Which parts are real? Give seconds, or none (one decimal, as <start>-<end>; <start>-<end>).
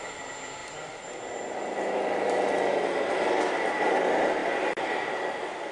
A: 0.0-5.7